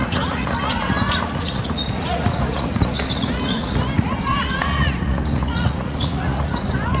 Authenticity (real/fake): fake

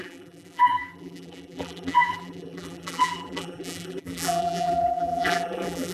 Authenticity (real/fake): fake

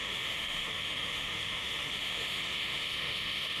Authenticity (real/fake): fake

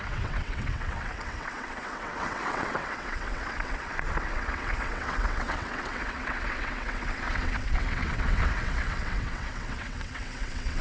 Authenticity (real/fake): fake